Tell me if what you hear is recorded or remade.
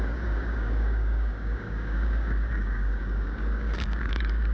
remade